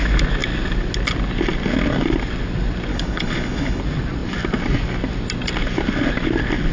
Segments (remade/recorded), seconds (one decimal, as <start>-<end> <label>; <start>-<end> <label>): 0.0-2.9 recorded; 2.9-3.8 remade; 3.8-6.7 recorded